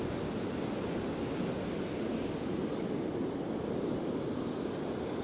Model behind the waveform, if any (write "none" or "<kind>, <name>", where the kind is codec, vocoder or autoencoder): none